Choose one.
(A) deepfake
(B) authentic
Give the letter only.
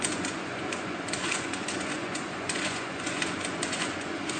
A